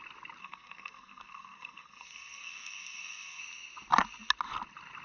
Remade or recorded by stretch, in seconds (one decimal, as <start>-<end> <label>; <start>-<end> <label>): 0.0-0.4 recorded; 0.4-3.4 remade; 3.4-5.0 recorded